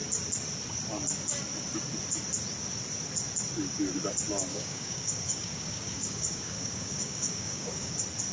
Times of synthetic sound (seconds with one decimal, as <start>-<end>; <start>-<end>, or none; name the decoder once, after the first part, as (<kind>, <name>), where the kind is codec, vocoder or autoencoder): 4.5-7.9 (codec, DAC)